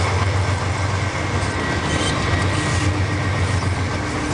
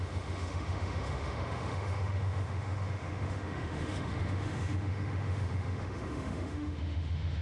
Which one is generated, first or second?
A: second